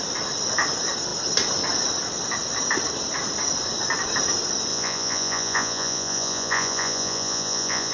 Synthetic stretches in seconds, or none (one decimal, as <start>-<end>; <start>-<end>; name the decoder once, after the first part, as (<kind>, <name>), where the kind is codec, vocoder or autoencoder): 4.7-7.9 (vocoder, Vocos)